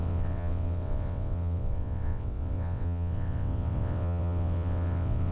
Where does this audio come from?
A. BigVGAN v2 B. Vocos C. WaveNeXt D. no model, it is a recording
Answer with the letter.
C